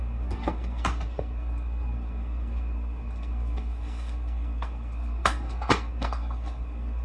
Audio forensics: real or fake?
fake